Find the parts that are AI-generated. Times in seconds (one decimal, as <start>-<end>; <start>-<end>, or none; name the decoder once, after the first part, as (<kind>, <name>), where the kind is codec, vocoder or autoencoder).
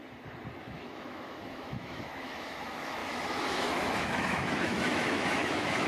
0.6-5.9 (autoencoder, DAC-VAE)